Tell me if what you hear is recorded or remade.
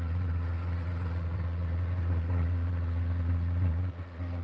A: remade